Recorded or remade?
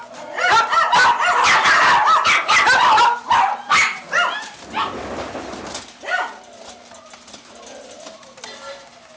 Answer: recorded